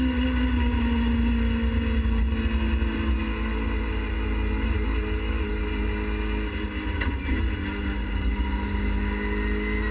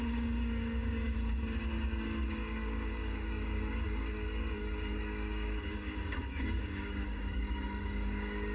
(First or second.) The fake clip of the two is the second